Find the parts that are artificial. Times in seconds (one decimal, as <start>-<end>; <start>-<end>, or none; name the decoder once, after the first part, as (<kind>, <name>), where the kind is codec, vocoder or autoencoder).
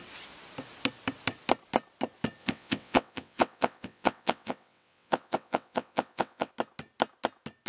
2.4-6.5 (vocoder, WaveNeXt)